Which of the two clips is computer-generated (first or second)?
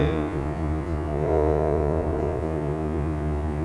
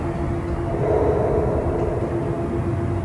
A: first